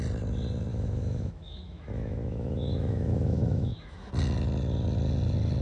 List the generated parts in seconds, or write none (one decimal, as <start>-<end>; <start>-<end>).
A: 0.7-4.1